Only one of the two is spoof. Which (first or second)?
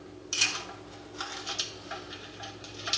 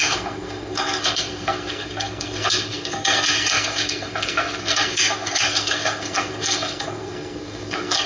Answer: second